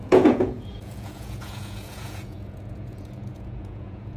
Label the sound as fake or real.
fake